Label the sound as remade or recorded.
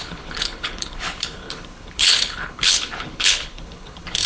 remade